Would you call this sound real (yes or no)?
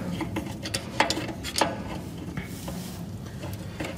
yes